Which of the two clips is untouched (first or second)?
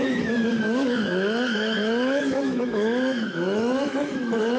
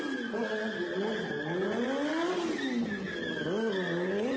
second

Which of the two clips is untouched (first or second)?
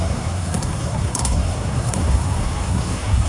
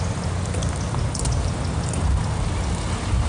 second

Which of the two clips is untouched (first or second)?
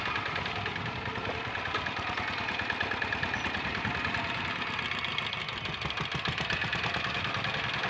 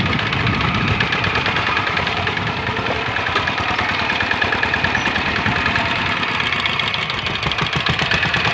first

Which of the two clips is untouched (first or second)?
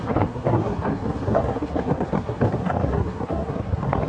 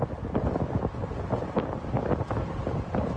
second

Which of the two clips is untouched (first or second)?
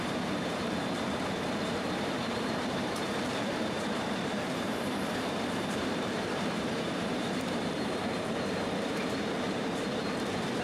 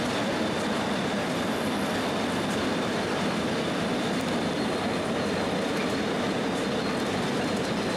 second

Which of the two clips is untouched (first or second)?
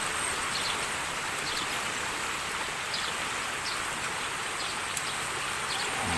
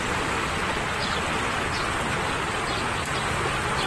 first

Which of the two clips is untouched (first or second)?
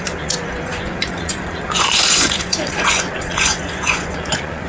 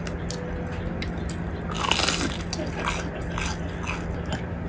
second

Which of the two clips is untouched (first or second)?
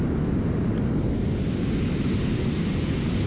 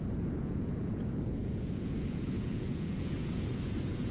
first